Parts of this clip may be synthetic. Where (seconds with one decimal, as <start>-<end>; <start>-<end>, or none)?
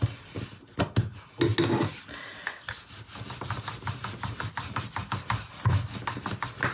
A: none